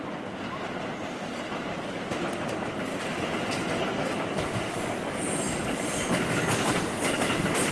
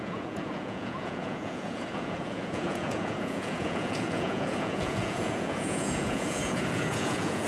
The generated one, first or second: second